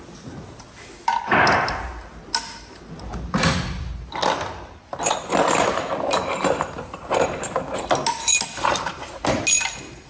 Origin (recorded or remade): recorded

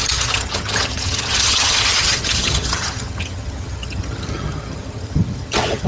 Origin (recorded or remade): remade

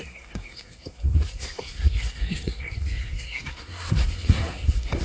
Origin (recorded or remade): remade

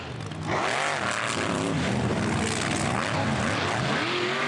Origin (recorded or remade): recorded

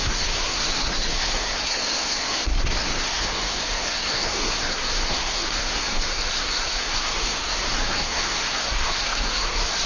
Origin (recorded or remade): remade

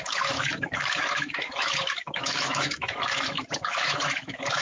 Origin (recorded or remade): remade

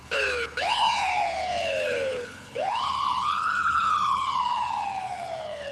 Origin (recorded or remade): remade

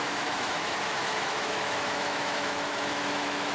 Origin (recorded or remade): remade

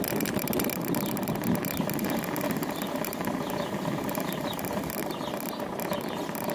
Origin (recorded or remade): recorded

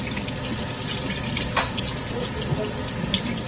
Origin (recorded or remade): recorded